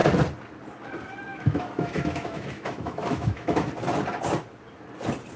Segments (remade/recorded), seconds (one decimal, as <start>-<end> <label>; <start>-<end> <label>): 0.0-1.3 recorded; 1.3-3.7 remade; 3.7-5.4 recorded